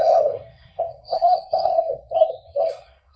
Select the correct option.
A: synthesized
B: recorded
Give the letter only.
A